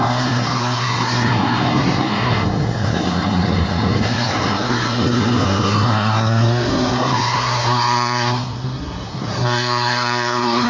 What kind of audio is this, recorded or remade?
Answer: remade